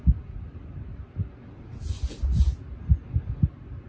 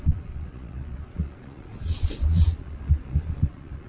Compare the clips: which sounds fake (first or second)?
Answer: second